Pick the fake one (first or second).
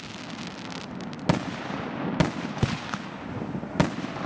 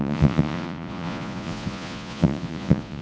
second